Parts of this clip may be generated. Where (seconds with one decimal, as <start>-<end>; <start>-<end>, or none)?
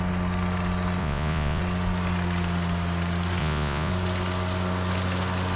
1.0-1.6; 3.4-3.9